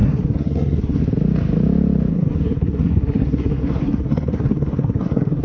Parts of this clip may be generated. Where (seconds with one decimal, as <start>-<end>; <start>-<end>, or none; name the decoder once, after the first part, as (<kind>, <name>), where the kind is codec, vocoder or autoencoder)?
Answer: 0.0-1.0 (codec, SNAC); 2.1-5.4